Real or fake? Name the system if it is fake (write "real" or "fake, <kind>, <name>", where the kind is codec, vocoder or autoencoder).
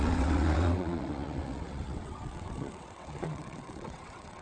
fake, vocoder, WaveNeXt